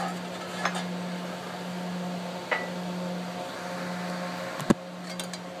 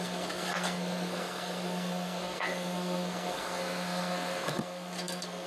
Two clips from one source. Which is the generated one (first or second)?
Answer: second